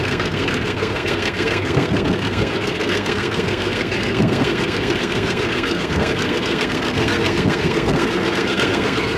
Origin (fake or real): fake